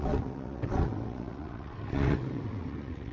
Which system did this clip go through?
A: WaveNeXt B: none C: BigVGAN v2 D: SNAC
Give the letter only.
A